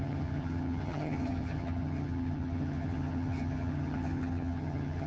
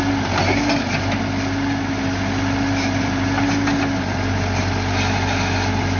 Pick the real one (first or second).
second